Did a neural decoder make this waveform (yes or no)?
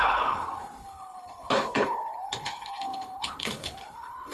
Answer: yes